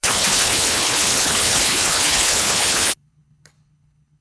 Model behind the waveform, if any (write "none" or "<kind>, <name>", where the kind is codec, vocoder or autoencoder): codec, HILCodec